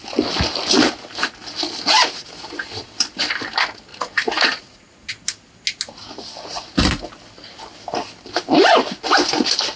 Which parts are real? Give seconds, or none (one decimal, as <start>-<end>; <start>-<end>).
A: 0.0-3.9; 5.1-9.8